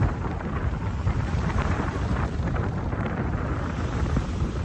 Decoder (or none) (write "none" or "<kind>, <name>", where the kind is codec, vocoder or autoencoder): vocoder, BigVGAN v2